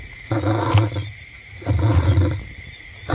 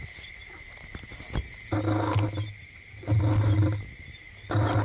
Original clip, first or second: second